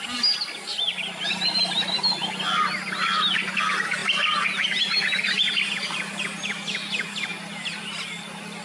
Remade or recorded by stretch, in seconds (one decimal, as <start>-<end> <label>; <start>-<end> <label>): 0.0-8.6 recorded